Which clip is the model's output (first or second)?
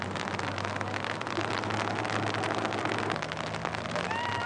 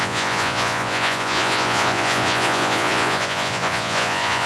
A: second